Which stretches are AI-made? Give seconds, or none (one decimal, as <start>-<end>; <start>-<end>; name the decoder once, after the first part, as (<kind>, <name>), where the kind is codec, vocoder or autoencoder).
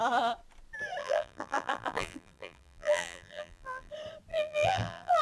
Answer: 1.0-3.9 (vocoder, BigVGAN v2); 4.3-5.2